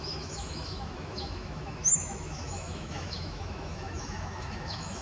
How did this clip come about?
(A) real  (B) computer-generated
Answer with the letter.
B